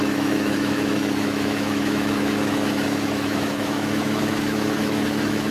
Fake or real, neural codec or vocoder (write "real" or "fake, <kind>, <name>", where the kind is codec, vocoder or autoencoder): fake, autoencoder, DAC-VAE